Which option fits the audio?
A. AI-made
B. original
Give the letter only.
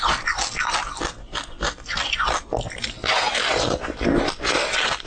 B